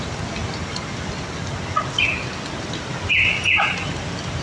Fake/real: real